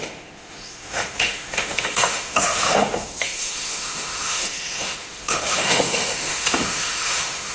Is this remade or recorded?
remade